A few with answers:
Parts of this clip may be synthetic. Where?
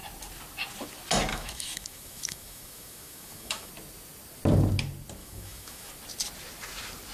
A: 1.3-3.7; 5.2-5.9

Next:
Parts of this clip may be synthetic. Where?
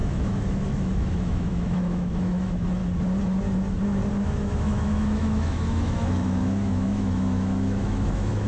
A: 0.0-2.8; 4.1-8.5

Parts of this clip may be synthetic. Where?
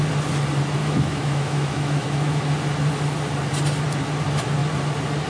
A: 0.8-2.4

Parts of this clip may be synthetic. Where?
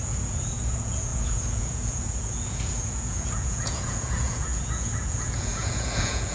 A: 0.0-6.3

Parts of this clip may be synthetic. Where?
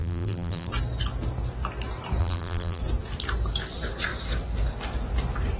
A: 0.0-0.7; 2.2-2.8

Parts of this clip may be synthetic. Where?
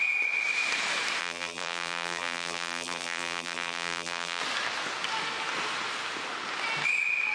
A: 1.2-4.4